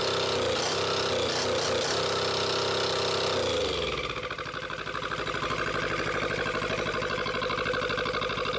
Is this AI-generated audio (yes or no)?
no